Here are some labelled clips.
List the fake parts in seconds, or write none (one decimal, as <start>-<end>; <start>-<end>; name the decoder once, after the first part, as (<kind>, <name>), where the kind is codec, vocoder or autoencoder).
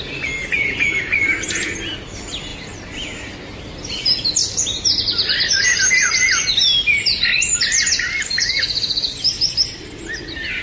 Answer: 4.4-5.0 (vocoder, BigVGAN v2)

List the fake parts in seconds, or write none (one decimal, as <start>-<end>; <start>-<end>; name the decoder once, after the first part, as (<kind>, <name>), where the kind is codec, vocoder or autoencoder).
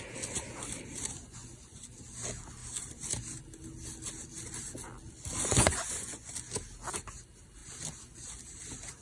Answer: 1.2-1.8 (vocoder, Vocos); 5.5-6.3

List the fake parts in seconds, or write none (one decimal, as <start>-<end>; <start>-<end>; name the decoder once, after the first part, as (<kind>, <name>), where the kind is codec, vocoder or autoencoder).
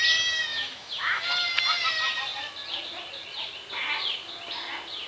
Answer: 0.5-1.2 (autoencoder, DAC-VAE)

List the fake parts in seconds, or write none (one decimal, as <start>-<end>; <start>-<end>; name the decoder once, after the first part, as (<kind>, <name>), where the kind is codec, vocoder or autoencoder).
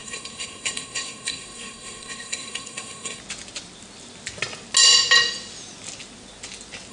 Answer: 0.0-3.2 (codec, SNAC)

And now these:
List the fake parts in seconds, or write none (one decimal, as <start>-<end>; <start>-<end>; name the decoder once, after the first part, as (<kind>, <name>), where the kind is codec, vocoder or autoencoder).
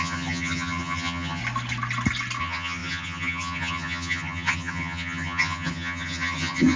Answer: 0.0-1.4 (vocoder, HiFi-GAN); 2.4-6.8